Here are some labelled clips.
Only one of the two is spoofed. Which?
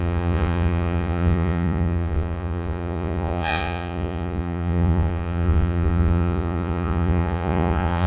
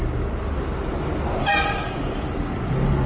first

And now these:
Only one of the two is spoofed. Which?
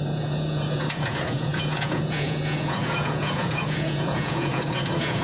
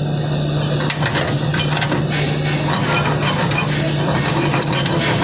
first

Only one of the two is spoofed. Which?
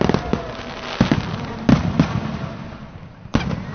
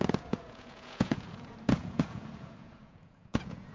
second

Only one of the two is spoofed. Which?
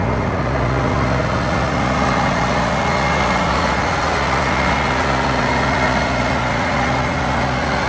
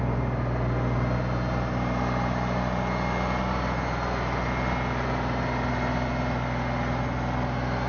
first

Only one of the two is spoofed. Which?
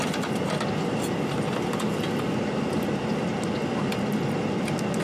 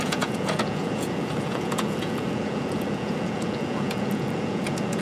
second